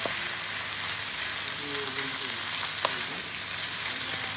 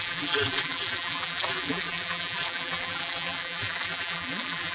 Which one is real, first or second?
first